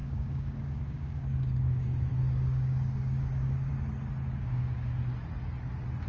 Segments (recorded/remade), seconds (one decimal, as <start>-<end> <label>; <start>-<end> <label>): 0.0-3.7 remade; 3.7-4.3 recorded; 4.3-4.9 remade; 4.9-6.1 recorded

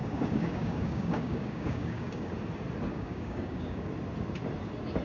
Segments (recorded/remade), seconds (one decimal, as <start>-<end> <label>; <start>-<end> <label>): 0.0-2.3 remade; 2.3-2.9 recorded; 2.9-3.9 remade; 3.9-5.0 recorded

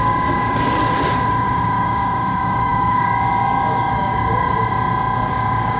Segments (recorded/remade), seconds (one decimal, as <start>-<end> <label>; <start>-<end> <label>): 0.0-0.8 remade; 0.8-1.3 recorded; 1.3-4.7 remade; 4.7-5.3 recorded; 5.3-5.8 remade

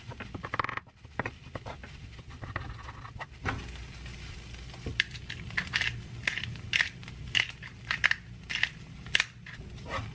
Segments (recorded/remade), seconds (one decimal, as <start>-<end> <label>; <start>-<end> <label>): 0.0-10.1 recorded

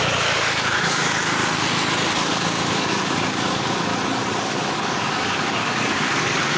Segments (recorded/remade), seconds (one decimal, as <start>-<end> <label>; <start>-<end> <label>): 0.0-1.4 remade; 1.4-2.1 recorded; 2.1-3.9 remade; 3.9-4.4 recorded; 4.4-6.6 remade

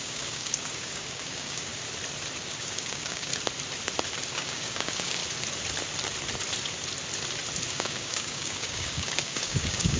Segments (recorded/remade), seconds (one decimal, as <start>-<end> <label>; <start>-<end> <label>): 0.0-1.7 remade; 1.7-2.4 recorded; 2.4-3.3 remade; 3.3-4.4 recorded; 4.4-5.2 remade; 5.2-7.7 recorded; 7.7-10.0 remade

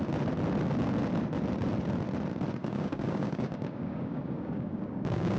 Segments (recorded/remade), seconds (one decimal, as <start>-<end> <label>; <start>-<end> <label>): 0.0-2.6 recorded; 2.6-5.4 remade

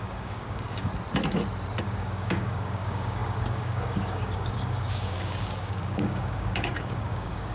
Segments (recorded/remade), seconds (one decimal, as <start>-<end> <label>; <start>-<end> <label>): 0.0-0.9 remade; 0.9-1.8 recorded; 1.8-7.5 remade